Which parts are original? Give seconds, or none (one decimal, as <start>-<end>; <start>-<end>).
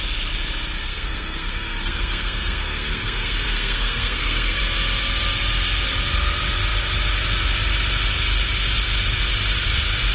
0.0-0.8; 4.6-10.1